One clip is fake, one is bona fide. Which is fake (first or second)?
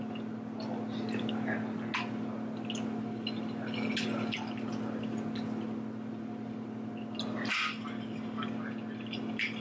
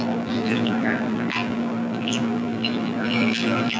second